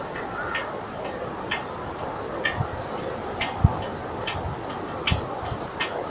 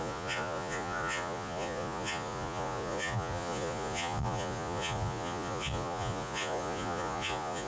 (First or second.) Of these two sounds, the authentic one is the first